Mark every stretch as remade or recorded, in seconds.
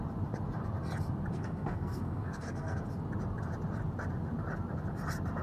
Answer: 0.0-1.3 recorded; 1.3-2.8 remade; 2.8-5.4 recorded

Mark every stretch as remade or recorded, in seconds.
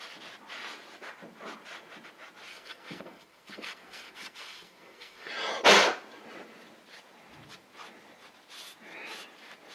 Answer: 0.0-2.5 recorded; 2.5-5.3 remade; 5.3-9.7 recorded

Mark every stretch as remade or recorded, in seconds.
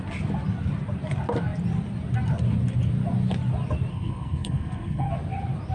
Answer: 0.0-3.9 recorded; 3.9-5.1 remade; 5.1-5.7 recorded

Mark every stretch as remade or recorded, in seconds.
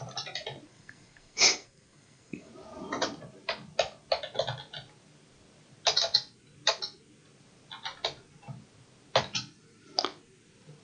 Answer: 0.0-0.7 recorded; 0.7-2.5 remade; 2.5-10.8 recorded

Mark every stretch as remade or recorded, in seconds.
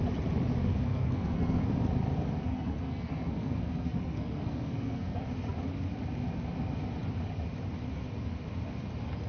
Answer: 0.0-0.7 recorded; 0.7-1.7 remade; 1.7-2.4 recorded; 2.4-5.2 remade; 5.2-9.3 recorded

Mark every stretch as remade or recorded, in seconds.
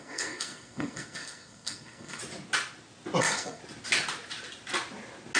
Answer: 0.0-2.2 remade; 2.2-3.2 recorded; 3.2-3.6 remade; 3.6-5.4 recorded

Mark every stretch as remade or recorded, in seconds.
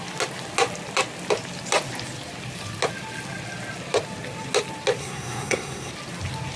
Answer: 0.0-5.0 recorded; 5.0-5.9 remade; 5.9-6.6 recorded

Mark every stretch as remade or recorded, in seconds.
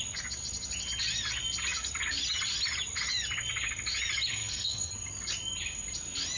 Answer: 0.0-4.3 recorded; 4.3-4.9 remade; 4.9-6.4 recorded